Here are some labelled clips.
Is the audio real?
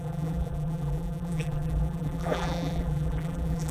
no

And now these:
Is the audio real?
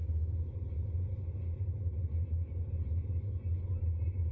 no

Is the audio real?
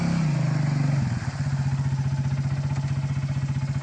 yes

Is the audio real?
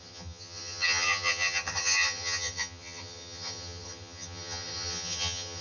no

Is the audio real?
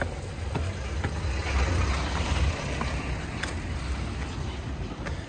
yes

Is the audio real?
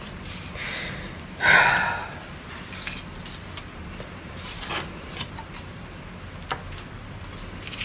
yes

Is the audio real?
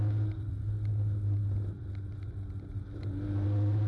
yes